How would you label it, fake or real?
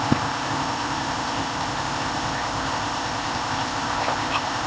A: fake